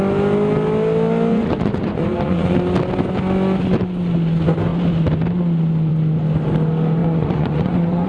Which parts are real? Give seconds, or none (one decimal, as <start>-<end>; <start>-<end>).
0.0-1.3; 2.6-7.0